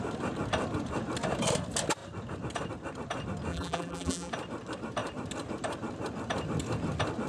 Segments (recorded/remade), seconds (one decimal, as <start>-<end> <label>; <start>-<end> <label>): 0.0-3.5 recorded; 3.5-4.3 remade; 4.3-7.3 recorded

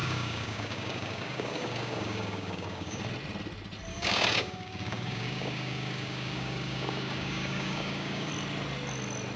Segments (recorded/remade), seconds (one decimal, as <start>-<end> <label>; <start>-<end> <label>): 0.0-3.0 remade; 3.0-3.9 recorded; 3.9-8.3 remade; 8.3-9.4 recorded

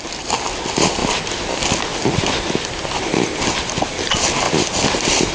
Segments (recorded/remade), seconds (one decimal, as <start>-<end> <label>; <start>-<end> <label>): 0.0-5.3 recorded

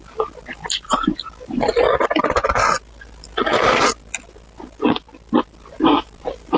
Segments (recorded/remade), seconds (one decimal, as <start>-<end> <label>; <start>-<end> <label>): 0.0-1.7 remade; 1.7-5.7 recorded; 5.7-6.6 remade